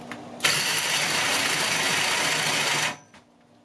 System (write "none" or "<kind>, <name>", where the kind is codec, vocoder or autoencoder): none